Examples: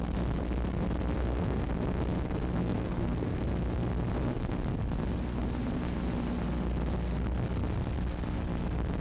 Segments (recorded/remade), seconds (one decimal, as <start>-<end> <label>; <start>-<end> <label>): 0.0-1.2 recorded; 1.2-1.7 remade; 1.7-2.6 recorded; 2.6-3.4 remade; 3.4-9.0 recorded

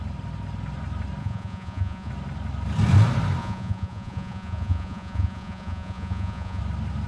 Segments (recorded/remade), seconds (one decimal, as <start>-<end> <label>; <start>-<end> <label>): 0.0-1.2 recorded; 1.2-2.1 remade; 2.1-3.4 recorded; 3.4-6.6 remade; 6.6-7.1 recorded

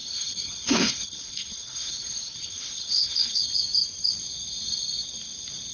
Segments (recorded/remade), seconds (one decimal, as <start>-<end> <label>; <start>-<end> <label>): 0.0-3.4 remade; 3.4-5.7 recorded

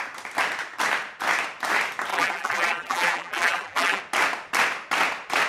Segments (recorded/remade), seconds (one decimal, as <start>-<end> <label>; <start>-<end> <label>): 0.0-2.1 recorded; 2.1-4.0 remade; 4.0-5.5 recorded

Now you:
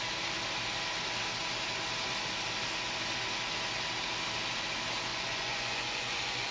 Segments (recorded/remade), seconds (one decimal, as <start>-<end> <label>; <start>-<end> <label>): 0.0-5.1 recorded; 5.1-6.5 remade

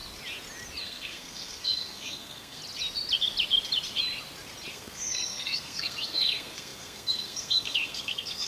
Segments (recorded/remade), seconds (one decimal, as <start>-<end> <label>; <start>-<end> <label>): 0.0-0.8 recorded; 0.8-2.6 remade; 2.6-4.7 recorded; 4.7-8.5 remade